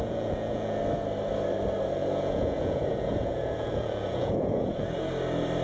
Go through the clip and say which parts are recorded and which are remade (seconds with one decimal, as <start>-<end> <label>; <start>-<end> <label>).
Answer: 0.0-0.8 remade; 0.8-2.0 recorded; 2.0-5.1 remade; 5.1-5.6 recorded